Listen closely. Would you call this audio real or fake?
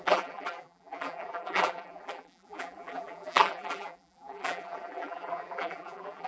fake